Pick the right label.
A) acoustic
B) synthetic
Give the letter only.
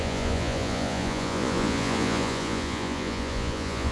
B